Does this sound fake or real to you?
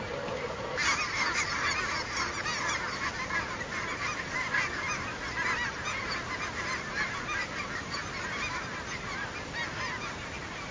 real